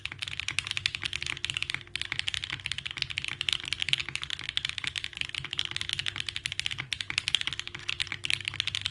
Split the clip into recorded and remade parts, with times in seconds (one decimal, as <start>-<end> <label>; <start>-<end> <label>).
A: 0.0-8.9 recorded